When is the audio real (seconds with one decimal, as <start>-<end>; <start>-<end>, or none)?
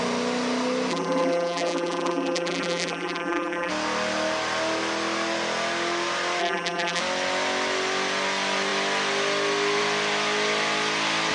0.0-0.9; 3.7-6.4; 7.0-11.3